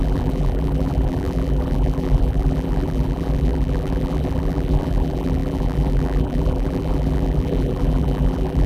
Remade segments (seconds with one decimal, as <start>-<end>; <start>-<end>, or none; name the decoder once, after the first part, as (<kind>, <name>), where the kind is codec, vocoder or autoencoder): 0.0-8.7 (vocoder, BigVGAN v2)